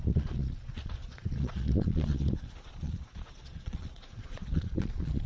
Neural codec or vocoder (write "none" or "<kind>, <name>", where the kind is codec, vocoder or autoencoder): vocoder, Vocos